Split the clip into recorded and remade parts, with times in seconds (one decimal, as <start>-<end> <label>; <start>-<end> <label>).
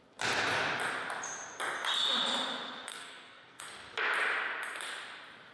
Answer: 0.0-2.9 recorded; 2.9-3.6 remade; 3.6-5.5 recorded